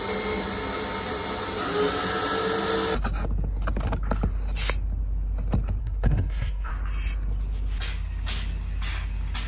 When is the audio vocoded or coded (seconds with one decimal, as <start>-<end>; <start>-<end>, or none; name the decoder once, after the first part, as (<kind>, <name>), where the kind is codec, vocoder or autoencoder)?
5.8-6.7 (codec, SNAC)